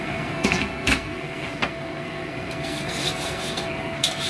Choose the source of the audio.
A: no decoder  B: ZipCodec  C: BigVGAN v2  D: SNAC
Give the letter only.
D